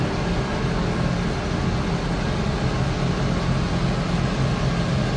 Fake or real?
real